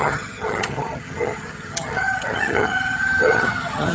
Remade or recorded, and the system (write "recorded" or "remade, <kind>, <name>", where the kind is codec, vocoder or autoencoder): remade, vocoder, HiFi-GAN